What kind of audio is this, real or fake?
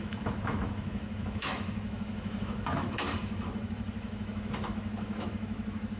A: fake